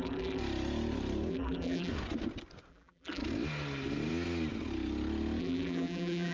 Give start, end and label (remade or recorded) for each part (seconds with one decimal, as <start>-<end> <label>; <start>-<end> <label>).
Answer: 0.0-0.4 remade; 0.4-1.3 recorded; 1.3-1.9 remade; 1.9-2.7 recorded; 2.7-3.2 remade; 3.2-5.4 recorded; 5.4-6.3 remade